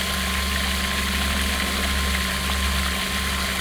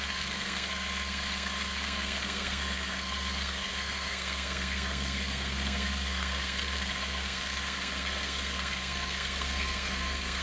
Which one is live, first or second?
first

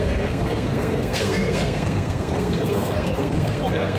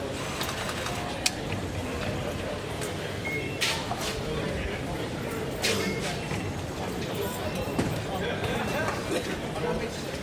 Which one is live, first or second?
second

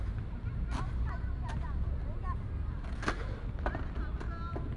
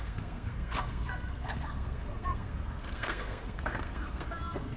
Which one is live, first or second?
first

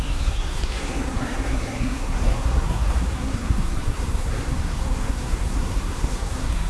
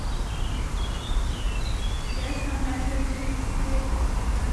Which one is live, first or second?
second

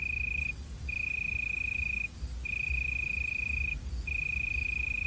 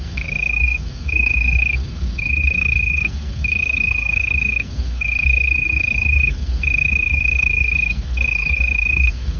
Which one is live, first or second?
first